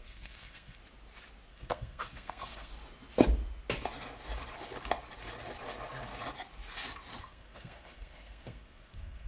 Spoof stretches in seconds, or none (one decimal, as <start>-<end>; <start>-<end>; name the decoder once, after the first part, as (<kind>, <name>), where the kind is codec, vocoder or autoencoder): 0.0-0.8 (codec, SNAC); 1.5-2.7; 7.2-9.3